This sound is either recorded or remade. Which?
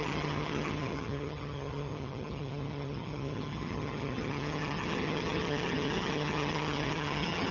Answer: remade